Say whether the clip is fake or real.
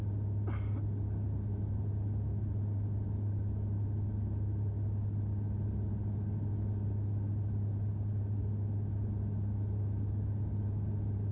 real